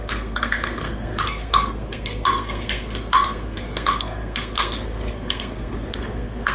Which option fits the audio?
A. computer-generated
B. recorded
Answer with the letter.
A